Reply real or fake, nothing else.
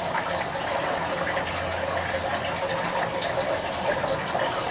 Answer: real